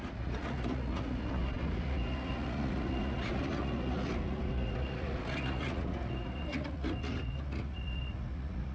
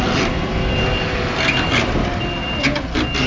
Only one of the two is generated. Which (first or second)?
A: first